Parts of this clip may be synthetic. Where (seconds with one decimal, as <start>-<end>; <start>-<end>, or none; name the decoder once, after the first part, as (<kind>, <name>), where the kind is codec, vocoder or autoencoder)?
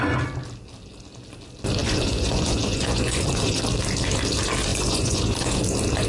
1.8-3.6 (vocoder, Vocos); 4.7-5.6